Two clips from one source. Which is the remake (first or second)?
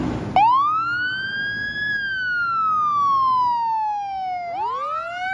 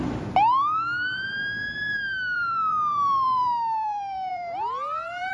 second